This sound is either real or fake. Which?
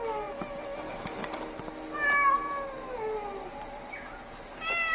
real